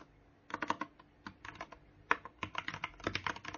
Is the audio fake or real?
real